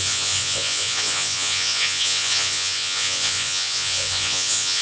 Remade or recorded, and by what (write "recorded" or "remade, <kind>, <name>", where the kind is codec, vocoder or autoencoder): remade, vocoder, Vocos